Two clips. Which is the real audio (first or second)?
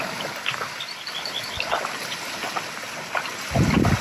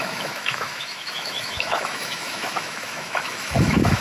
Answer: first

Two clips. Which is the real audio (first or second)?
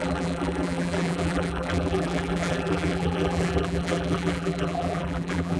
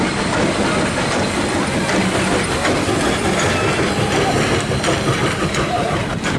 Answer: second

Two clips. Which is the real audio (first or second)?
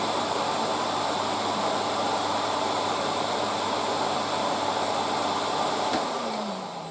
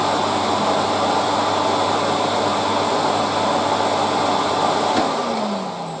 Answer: second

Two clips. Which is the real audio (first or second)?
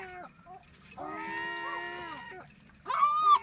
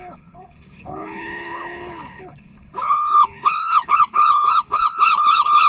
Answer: first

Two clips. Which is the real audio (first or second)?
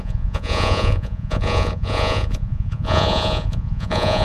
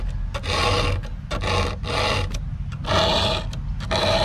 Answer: second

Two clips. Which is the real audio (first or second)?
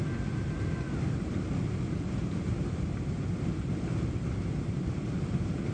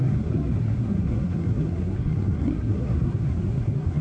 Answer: first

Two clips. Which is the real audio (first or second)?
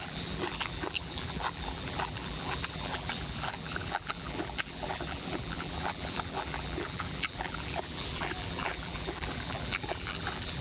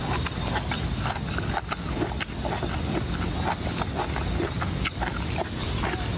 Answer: second